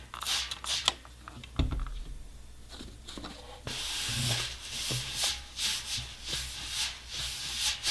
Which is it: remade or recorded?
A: recorded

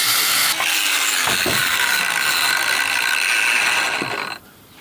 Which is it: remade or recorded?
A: recorded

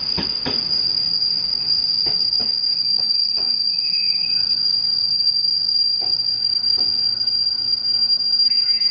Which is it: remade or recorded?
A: remade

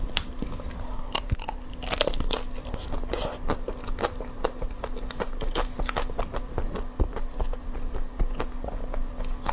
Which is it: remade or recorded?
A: recorded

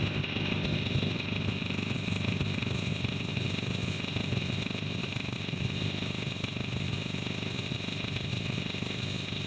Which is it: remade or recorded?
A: remade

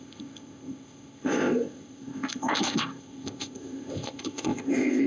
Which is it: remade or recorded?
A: remade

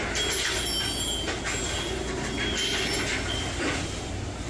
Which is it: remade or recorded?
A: recorded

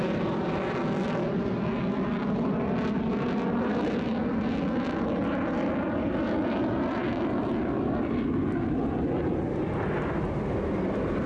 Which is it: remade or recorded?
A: recorded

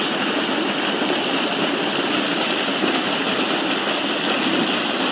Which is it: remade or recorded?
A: recorded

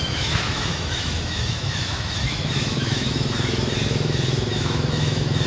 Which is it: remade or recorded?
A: remade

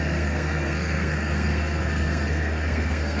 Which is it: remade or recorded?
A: remade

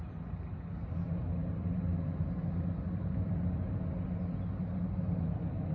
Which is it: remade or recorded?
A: recorded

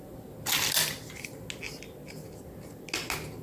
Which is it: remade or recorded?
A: recorded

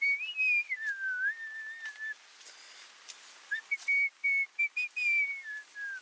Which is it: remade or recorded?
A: recorded